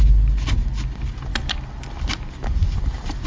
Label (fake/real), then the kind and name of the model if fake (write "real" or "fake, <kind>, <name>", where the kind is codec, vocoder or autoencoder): real